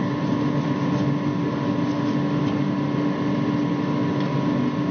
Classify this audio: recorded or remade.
recorded